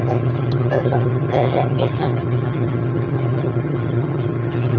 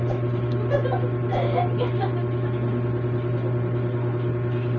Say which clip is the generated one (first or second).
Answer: first